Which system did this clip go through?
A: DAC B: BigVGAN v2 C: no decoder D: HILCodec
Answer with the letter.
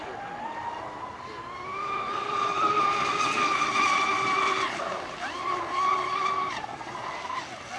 C